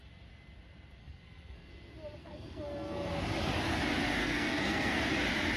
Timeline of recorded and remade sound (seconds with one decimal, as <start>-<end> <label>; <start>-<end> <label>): 0.0-1.0 recorded; 1.0-1.7 remade; 1.7-2.2 recorded; 2.2-3.1 remade; 3.1-4.2 recorded; 4.2-5.0 remade; 5.0-5.6 recorded